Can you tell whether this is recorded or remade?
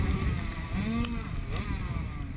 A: recorded